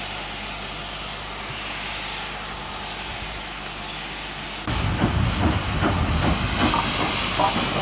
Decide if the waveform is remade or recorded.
recorded